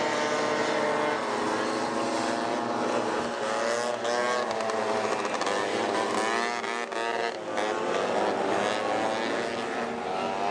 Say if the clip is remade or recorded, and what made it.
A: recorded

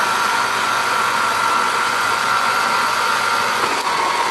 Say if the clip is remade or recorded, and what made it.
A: remade, vocoder, Vocos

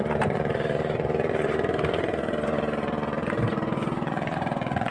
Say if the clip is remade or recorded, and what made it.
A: remade, vocoder, Vocos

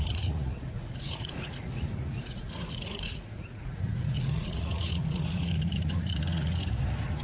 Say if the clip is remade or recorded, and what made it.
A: remade, vocoder, Vocos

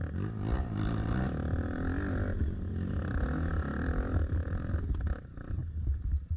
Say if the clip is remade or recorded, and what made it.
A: recorded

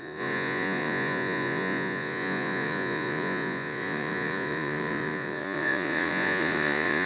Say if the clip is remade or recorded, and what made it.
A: remade, vocoder, Vocos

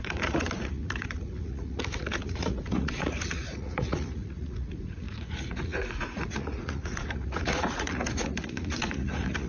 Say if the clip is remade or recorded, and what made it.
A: remade, vocoder, Vocos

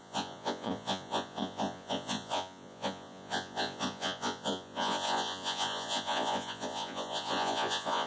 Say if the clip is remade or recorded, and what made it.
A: remade, vocoder, Vocos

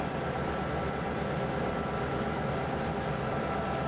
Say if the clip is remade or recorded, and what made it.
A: recorded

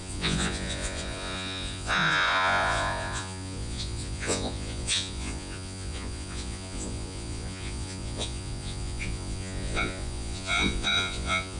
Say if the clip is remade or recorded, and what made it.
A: remade, vocoder, Vocos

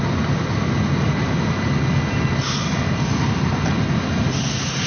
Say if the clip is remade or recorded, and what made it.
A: recorded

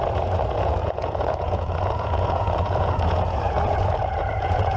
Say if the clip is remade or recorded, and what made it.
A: remade, vocoder, Vocos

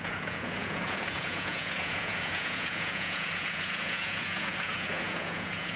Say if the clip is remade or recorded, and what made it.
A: remade, vocoder, Vocos